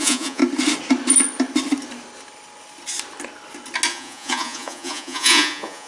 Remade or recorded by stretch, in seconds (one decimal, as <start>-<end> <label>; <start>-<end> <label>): 0.0-0.4 remade; 0.4-3.9 recorded; 3.9-5.9 remade